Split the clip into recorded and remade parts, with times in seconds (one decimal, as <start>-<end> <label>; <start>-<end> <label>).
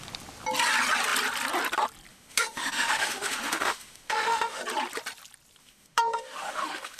0.0-2.1 recorded; 2.1-4.6 remade; 4.6-5.6 recorded; 5.6-7.0 remade